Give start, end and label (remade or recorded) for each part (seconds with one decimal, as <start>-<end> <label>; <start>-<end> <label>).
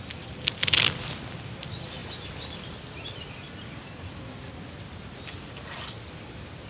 0.0-6.7 recorded